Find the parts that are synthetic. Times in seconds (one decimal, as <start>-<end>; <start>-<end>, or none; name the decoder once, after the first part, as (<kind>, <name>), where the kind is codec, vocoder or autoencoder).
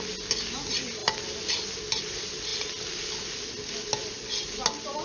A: none